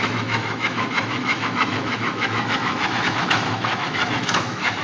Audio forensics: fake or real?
fake